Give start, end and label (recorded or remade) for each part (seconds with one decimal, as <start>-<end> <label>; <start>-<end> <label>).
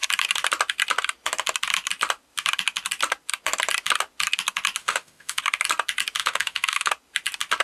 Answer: 0.0-4.8 recorded; 4.8-5.4 remade; 5.4-6.2 recorded; 6.2-6.9 remade; 6.9-7.6 recorded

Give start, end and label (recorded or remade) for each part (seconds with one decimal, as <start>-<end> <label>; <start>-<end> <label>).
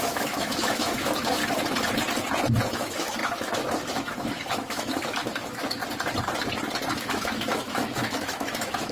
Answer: 0.0-1.4 remade; 1.4-2.7 recorded; 2.7-5.8 remade; 5.8-6.9 recorded; 6.9-8.9 remade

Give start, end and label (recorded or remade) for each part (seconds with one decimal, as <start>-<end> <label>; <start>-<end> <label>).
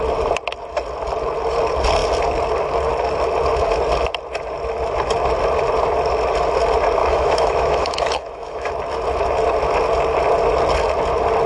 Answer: 0.0-7.0 recorded; 7.0-8.7 remade; 8.7-11.5 recorded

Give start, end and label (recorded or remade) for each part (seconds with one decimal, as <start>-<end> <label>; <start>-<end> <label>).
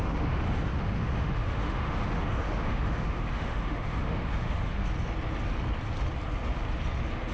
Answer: 0.0-4.8 remade; 4.8-7.3 recorded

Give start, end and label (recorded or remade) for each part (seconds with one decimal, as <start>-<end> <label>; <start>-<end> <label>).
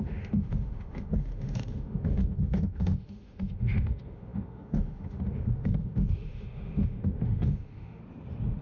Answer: 0.0-8.0 remade; 8.0-8.6 recorded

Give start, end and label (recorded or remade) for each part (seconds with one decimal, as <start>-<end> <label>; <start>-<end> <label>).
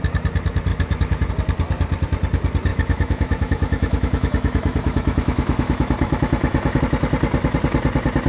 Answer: 0.0-0.7 recorded; 0.7-1.3 remade; 1.3-2.7 recorded; 2.7-6.8 remade; 6.8-8.3 recorded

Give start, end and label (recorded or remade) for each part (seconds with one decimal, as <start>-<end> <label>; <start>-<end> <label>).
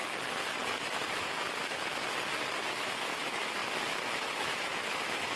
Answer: 0.0-1.1 recorded; 1.1-1.9 remade; 1.9-2.6 recorded; 2.6-5.4 remade